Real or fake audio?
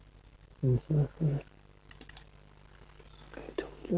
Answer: real